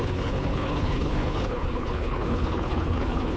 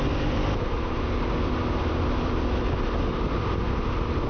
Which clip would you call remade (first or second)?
first